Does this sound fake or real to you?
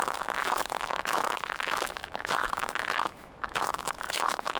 fake